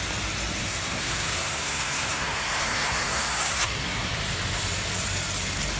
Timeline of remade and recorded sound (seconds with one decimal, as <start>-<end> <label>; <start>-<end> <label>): 0.0-0.6 recorded; 0.6-4.1 remade; 4.1-5.8 recorded